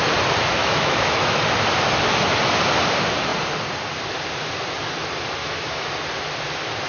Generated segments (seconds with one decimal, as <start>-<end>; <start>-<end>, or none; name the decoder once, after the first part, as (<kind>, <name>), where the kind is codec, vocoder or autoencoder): 0.6-1.4 (autoencoder, DAC-VAE); 5.4-5.9